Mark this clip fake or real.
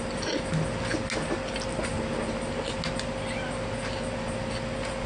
real